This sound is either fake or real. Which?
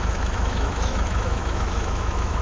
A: fake